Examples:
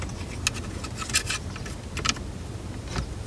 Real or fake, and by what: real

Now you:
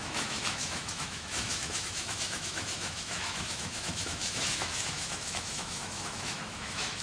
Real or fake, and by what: fake, autoencoder, DAC-VAE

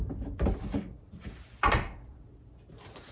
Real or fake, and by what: real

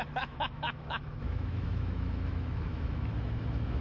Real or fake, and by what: fake, autoencoder, DAC-VAE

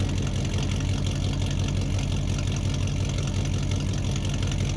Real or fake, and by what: real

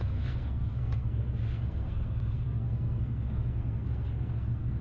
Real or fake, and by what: fake, codec, SNAC